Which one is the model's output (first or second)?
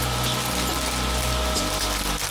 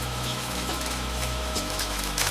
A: second